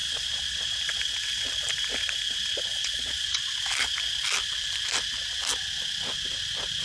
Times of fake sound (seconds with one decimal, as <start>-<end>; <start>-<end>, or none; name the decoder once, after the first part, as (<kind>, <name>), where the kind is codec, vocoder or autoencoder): 0.0-0.7 (vocoder, Vocos); 2.7-3.6